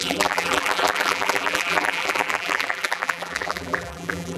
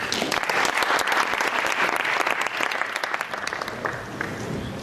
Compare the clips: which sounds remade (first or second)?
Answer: first